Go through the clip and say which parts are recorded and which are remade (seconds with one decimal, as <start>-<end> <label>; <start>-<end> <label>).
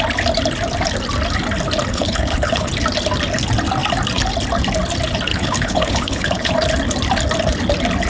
0.0-1.9 recorded; 1.9-2.7 remade; 2.7-5.3 recorded; 5.3-6.5 remade; 6.5-8.1 recorded